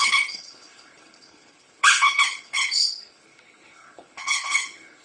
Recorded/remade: remade